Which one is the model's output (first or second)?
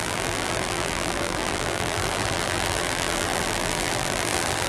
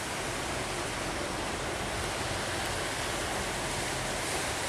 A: first